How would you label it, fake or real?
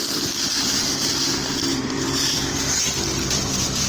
fake